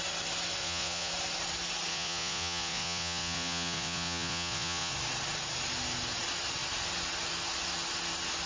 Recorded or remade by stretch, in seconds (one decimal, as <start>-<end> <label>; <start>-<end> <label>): 0.0-0.6 recorded; 0.6-1.1 remade; 1.1-1.9 recorded; 1.9-4.9 remade; 4.9-8.5 recorded

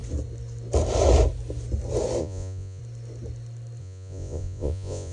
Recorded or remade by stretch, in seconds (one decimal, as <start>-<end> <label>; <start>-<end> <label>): 0.0-2.2 recorded; 2.2-2.8 remade; 2.8-3.8 recorded; 3.8-5.1 remade

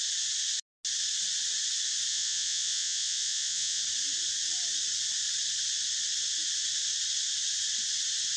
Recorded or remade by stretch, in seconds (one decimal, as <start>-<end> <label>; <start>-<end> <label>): 0.0-2.1 recorded; 2.1-3.8 remade; 3.8-8.4 recorded

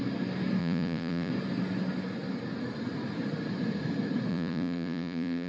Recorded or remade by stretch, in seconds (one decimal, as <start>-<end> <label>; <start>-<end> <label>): 0.0-0.6 recorded; 0.6-1.3 remade; 1.3-4.3 recorded; 4.3-5.5 remade